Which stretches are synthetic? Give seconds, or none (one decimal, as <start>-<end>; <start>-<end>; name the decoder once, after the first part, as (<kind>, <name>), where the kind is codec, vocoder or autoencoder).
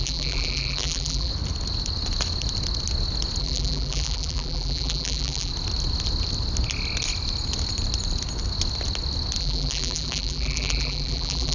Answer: 0.0-1.3 (vocoder, BigVGAN v2); 3.4-5.5; 9.4-11.5